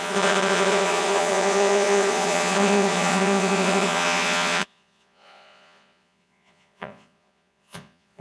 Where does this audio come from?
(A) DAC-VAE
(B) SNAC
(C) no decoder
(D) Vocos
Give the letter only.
D